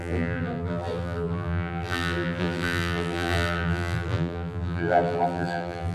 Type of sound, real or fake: fake